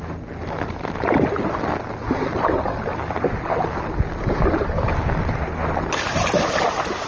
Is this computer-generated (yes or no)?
no